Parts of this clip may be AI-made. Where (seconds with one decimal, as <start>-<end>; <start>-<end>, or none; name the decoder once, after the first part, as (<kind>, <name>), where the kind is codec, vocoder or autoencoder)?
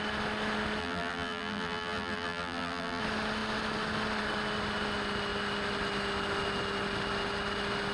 0.8-3.0 (vocoder, BigVGAN v2)